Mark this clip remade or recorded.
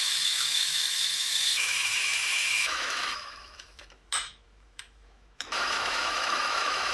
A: remade